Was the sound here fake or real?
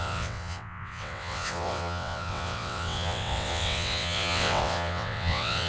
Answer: fake